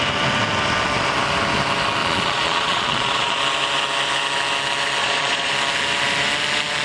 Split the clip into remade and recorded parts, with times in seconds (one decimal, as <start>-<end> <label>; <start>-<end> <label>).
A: 0.0-2.0 recorded; 2.0-3.4 remade; 3.4-5.0 recorded; 5.0-5.5 remade; 5.5-6.8 recorded